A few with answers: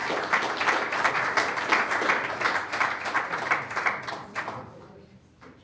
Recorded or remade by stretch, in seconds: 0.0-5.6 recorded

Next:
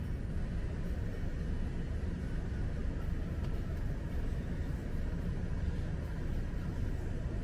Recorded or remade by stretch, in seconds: 0.0-7.4 recorded